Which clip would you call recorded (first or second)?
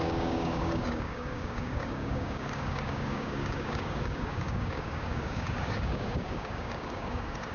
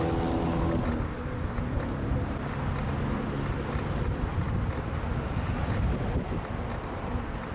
second